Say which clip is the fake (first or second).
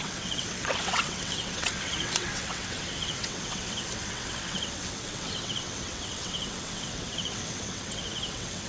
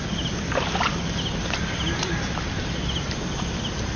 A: first